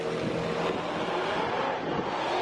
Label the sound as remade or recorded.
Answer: recorded